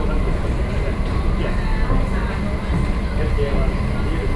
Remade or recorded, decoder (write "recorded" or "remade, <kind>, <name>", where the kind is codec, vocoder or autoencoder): recorded